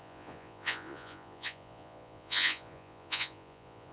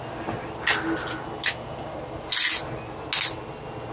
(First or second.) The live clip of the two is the second